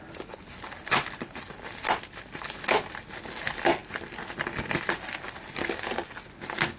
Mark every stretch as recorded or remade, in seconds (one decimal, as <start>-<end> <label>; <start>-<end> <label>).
0.0-6.8 recorded